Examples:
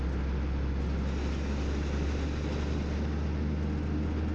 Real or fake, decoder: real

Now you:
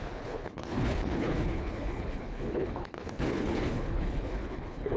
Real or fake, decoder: fake, codec, HILCodec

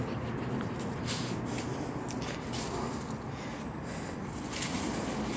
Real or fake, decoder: real